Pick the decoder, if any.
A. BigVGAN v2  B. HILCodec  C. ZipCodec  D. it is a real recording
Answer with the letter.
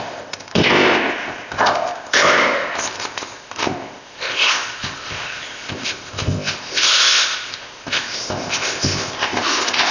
C